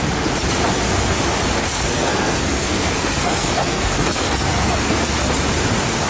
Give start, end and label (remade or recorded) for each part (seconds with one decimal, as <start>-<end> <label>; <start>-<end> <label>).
0.0-1.6 recorded; 1.6-5.3 remade; 5.3-6.1 recorded